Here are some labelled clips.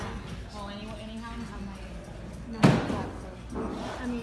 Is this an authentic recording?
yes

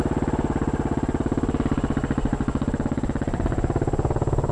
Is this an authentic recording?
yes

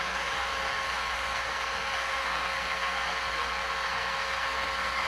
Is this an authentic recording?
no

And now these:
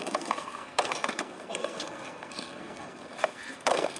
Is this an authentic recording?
no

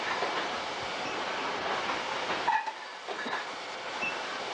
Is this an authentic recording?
yes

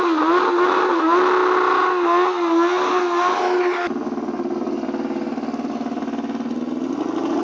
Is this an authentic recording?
yes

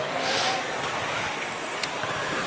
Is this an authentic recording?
yes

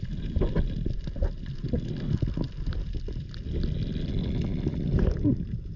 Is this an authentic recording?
yes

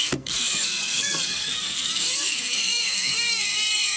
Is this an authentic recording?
no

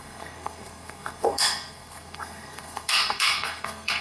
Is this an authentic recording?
no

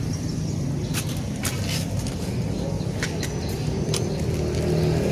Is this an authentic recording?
yes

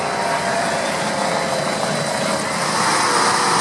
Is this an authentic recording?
yes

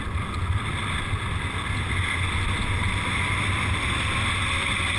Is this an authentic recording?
yes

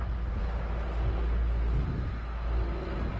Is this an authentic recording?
yes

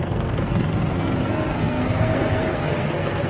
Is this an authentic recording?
no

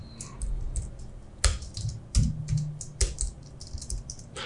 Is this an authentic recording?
yes